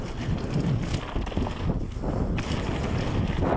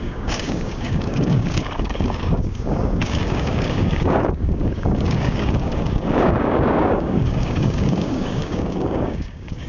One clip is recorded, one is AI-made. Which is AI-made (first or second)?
second